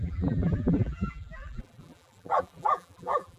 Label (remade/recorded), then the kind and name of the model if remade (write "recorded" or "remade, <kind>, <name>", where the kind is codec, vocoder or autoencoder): remade, vocoder, BigVGAN v2